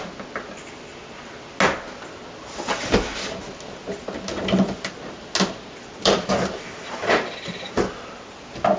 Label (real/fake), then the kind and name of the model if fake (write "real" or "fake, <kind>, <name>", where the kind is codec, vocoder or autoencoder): real